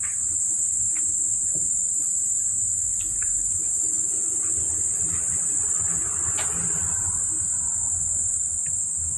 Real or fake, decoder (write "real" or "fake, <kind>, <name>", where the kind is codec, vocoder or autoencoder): real